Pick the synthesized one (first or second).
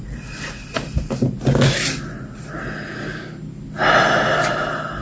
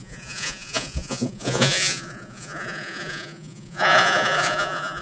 second